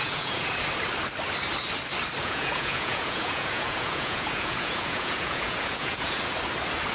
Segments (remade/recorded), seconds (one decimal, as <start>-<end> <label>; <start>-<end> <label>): 0.0-0.5 remade; 0.5-2.2 recorded; 2.2-6.3 remade; 6.3-6.9 recorded

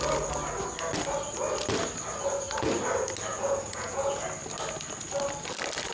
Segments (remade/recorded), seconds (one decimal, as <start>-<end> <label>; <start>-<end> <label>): 0.0-3.3 recorded; 3.3-4.2 remade; 4.2-5.9 recorded

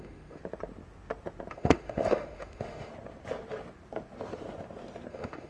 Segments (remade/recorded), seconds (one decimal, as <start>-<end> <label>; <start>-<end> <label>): 0.0-0.4 remade; 0.4-1.5 recorded; 1.5-2.9 remade; 2.9-5.1 recorded; 5.1-5.5 remade